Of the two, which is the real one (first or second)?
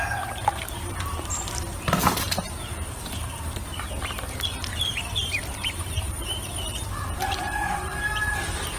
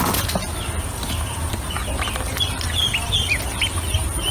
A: second